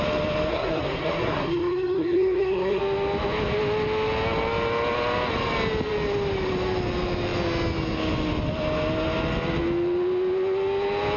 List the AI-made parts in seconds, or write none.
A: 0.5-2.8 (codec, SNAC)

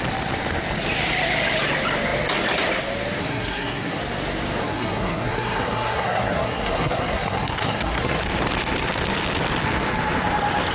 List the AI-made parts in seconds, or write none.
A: 3.2-4.0 (codec, SNAC); 4.6-8.2

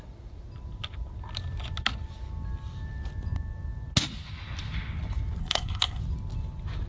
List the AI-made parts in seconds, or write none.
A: 5.4-6.0 (codec, SNAC)

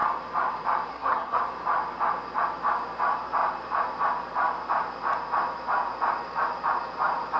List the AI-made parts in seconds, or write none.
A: 0.9-1.4 (codec, SNAC)

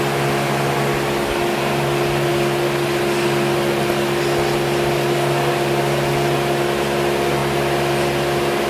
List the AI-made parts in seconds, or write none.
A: none

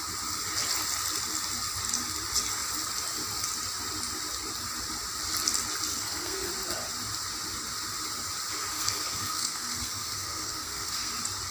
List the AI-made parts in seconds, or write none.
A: 5.9-6.5 (codec, SNAC); 8.7-11.1